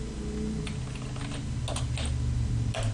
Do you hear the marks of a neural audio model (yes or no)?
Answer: no